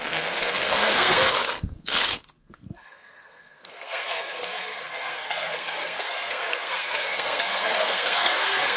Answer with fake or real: fake